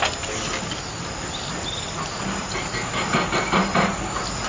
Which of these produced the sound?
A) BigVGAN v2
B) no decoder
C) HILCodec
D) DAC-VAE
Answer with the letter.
B